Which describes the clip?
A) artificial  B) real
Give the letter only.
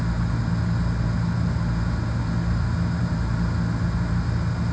B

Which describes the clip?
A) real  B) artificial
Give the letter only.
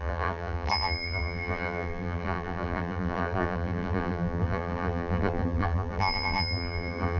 B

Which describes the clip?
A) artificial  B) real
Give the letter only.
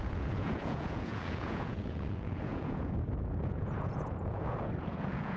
A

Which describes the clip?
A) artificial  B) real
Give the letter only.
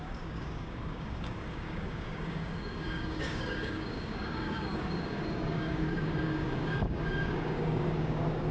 A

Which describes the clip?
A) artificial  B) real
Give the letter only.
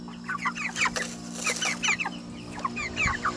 B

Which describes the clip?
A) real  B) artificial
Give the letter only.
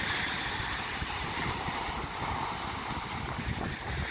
A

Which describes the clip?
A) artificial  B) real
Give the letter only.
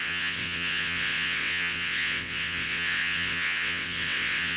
A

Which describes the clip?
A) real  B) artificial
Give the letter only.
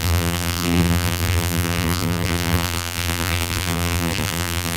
B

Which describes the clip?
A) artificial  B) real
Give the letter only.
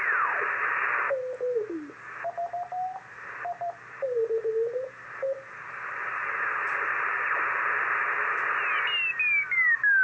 B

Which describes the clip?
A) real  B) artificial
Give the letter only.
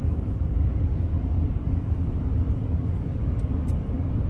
B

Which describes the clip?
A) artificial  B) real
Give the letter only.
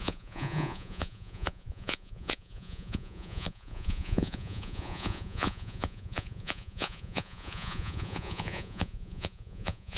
A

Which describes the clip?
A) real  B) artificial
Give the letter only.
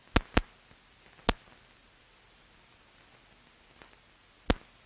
A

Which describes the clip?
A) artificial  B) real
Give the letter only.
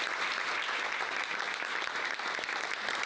B